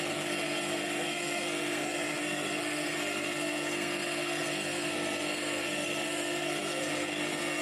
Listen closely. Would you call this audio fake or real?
fake